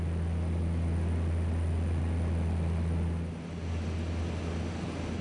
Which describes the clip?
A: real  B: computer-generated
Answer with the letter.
A